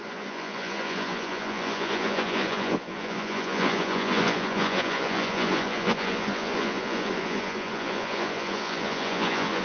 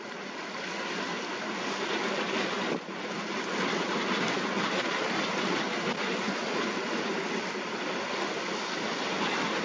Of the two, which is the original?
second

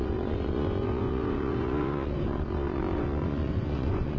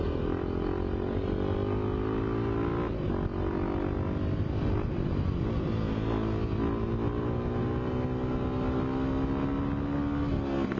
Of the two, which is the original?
second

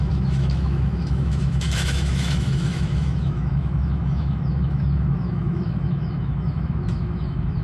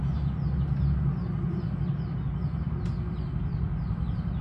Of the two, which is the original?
second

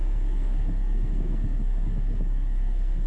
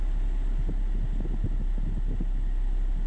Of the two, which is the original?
second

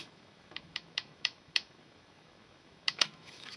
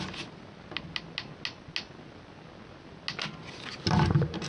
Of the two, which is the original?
second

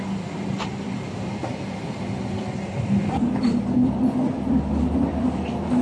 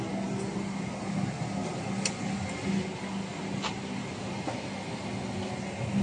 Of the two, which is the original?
second